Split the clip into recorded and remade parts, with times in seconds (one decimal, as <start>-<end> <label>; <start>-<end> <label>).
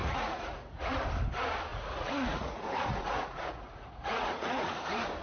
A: 0.0-1.0 remade; 1.0-1.7 recorded; 1.7-4.8 remade; 4.8-5.2 recorded